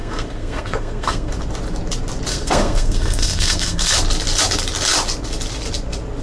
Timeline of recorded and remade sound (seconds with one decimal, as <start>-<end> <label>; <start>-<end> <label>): 0.0-1.3 remade; 1.3-2.3 recorded; 2.3-3.9 remade; 3.9-6.2 recorded